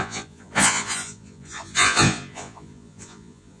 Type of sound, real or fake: fake